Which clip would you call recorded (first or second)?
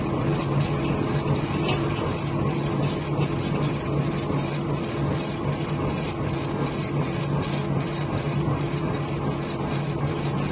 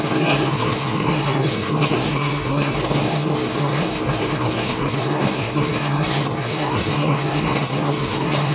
first